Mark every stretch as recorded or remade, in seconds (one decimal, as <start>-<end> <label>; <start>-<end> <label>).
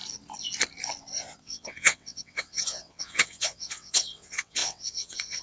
0.0-1.4 recorded; 1.4-5.4 remade